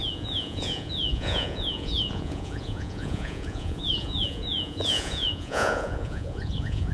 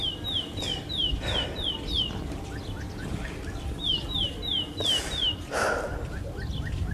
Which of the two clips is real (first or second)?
second